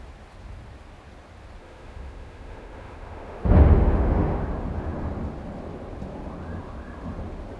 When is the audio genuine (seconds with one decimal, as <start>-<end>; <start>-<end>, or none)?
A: 0.0-1.6; 4.4-7.6